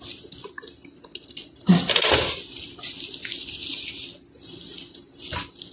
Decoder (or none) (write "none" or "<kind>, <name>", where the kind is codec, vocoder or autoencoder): none